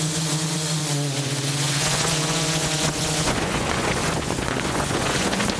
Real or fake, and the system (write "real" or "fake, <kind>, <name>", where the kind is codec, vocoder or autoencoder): fake, vocoder, Vocos